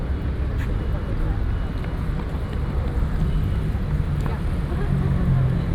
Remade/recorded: recorded